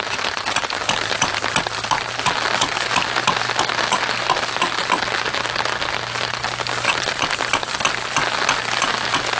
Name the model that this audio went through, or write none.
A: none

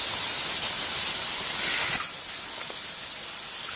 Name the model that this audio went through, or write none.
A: none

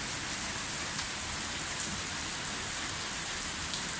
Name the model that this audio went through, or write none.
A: none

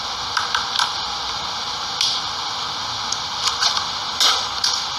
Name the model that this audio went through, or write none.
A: none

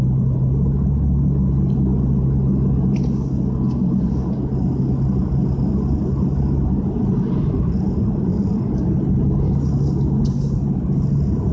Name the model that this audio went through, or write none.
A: none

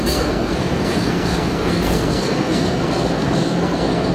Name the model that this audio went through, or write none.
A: codec, SNAC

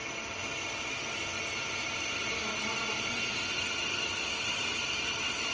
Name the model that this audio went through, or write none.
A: none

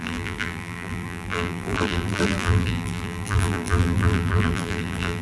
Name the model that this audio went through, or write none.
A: vocoder, BigVGAN v2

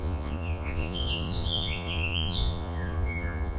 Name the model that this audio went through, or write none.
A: vocoder, Vocos